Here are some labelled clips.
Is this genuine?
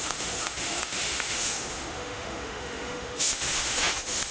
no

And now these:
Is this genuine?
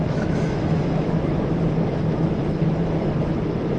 no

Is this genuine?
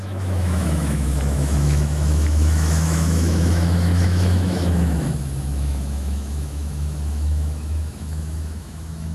no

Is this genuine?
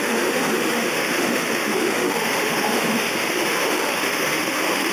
no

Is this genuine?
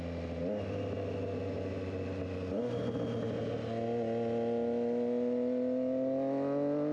yes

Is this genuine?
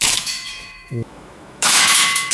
no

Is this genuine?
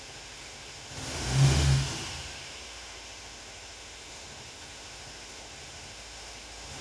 no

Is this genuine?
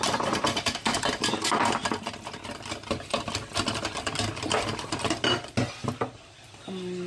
yes